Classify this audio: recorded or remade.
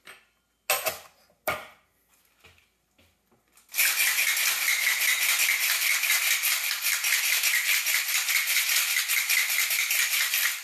recorded